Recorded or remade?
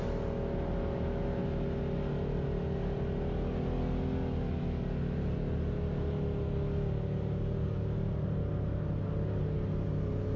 recorded